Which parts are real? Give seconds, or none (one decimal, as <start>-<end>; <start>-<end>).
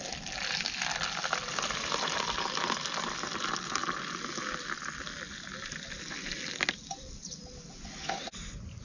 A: 0.0-8.8